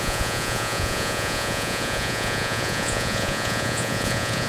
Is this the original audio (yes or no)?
no